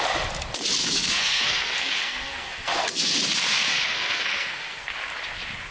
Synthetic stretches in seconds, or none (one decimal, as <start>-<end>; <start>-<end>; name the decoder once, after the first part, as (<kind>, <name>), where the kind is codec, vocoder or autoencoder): 0.8-3.2 (codec, SNAC); 3.7-4.9